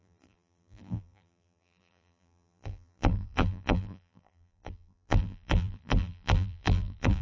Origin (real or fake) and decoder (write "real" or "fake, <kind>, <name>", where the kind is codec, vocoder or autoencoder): fake, vocoder, BigVGAN v2